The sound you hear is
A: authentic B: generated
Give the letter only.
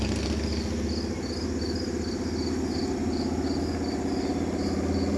A